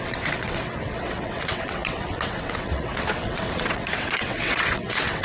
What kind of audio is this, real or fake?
fake